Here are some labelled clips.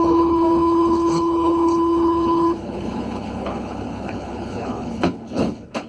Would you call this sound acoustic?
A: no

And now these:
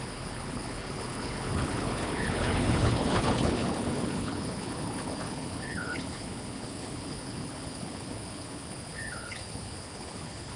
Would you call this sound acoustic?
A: no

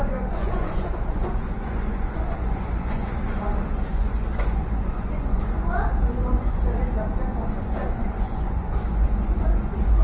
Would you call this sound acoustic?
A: no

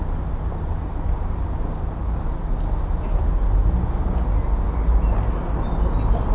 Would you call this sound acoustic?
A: yes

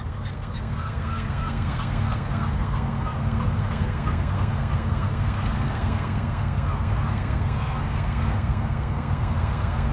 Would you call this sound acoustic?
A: no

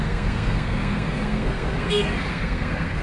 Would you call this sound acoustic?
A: no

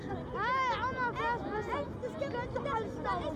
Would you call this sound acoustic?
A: yes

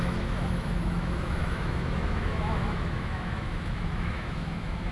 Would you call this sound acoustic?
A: no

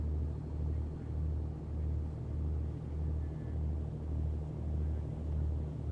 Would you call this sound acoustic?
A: yes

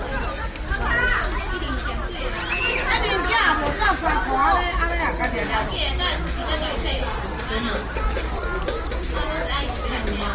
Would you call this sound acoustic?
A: yes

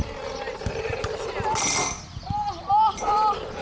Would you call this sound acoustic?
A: yes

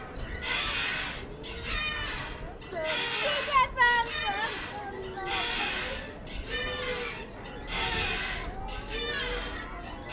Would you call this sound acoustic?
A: yes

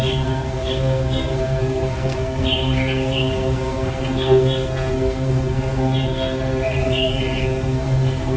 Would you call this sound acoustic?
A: no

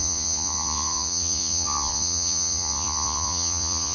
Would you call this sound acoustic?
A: no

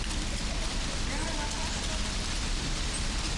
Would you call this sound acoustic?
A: yes